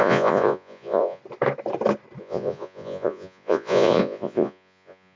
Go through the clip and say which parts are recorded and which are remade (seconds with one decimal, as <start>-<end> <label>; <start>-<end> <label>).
0.0-1.2 remade; 1.2-2.2 recorded; 2.2-5.2 remade